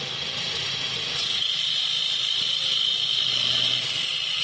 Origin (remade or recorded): recorded